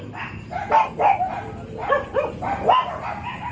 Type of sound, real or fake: real